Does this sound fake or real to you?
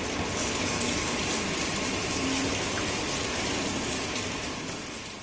real